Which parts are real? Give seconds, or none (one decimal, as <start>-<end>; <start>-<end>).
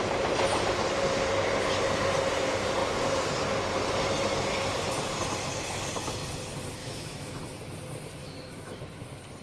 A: 0.0-6.8; 7.4-8.2; 8.8-9.4